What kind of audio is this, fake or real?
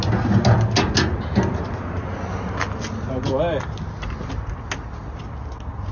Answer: real